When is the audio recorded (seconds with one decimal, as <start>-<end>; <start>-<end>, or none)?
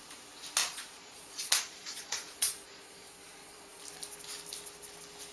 0.0-0.6; 3.8-5.3